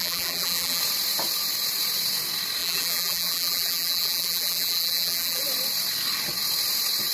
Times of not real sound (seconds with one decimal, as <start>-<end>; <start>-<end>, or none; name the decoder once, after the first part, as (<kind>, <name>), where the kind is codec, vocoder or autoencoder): 0.0-0.8 (vocoder, BigVGAN v2); 2.6-5.4